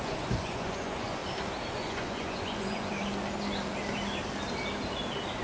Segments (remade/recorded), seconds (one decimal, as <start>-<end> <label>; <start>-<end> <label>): 0.0-1.2 remade; 1.2-1.7 recorded; 1.7-2.9 remade; 2.9-5.4 recorded